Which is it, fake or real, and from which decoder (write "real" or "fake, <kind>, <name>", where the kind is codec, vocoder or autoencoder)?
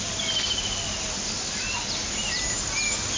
real